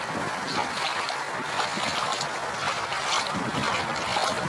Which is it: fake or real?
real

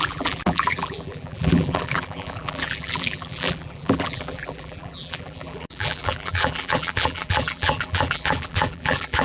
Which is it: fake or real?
fake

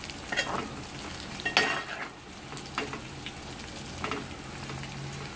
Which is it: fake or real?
real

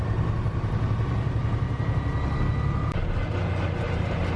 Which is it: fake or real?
real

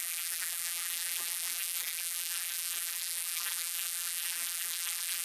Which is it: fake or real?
fake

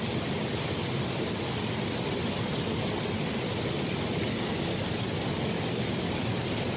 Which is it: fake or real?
real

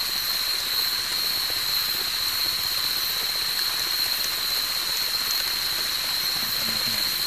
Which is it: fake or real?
real